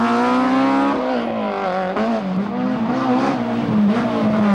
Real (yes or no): yes